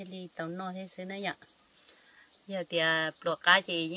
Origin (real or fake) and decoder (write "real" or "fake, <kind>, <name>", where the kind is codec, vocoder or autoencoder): real